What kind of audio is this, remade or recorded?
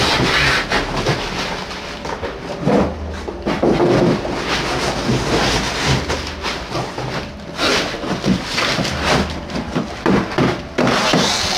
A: recorded